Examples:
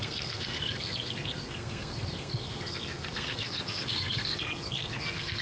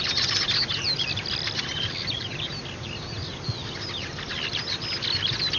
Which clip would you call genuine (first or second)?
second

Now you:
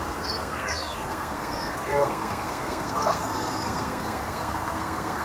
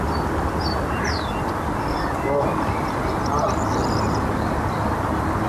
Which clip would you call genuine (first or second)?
second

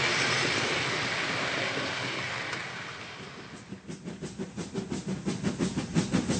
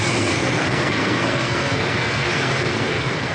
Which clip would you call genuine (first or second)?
first